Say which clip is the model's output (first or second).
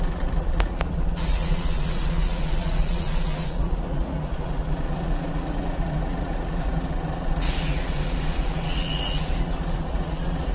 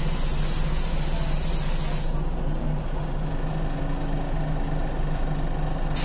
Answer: first